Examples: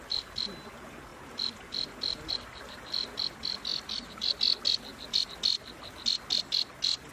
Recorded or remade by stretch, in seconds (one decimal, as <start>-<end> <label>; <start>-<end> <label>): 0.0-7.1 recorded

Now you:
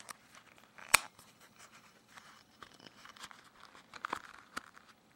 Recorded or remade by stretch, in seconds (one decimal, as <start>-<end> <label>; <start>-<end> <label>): 0.0-0.8 recorded; 0.8-3.2 remade; 3.2-5.2 recorded

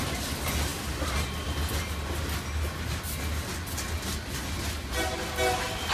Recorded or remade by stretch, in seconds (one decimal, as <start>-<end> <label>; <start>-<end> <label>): 0.0-5.9 recorded

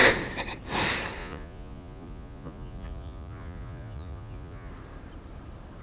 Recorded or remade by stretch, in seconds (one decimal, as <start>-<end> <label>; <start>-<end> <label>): 0.0-1.2 recorded; 1.2-4.7 remade; 4.7-5.8 recorded